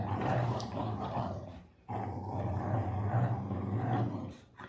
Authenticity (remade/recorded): remade